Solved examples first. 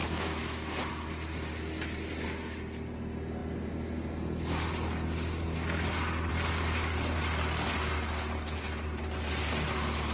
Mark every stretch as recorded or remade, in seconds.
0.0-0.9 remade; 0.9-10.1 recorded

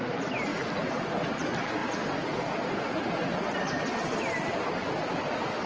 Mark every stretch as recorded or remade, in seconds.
0.0-5.7 recorded

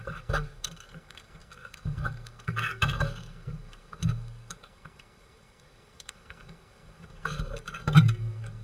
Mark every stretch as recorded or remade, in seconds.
0.0-8.6 remade

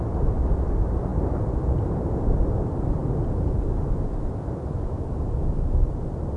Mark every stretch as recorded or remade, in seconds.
0.0-6.4 recorded

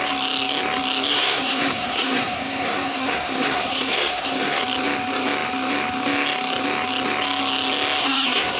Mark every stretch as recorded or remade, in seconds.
0.0-1.1 recorded; 1.1-4.6 remade; 4.6-8.0 recorded; 8.0-8.6 remade

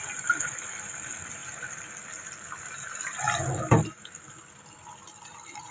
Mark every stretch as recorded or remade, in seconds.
0.0-5.7 recorded

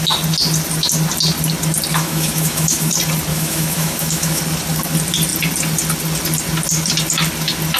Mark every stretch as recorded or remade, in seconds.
0.0-1.9 recorded; 1.9-2.9 remade; 2.9-3.3 recorded; 3.3-4.4 remade; 4.4-7.8 recorded